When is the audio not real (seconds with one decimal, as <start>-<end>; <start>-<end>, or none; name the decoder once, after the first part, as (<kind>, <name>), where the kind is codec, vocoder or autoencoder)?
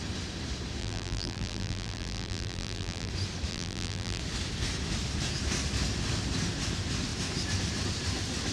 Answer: 0.8-3.1 (vocoder, BigVGAN v2); 3.5-4.2